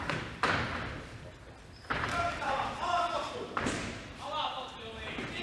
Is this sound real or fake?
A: fake